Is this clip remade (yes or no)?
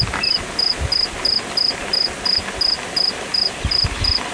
no